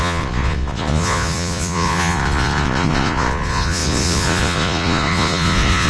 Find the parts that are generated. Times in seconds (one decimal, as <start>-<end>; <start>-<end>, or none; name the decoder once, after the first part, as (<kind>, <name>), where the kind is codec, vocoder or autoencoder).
0.0-5.9 (vocoder, Vocos)